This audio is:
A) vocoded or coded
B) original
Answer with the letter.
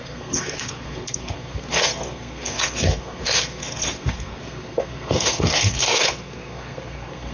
A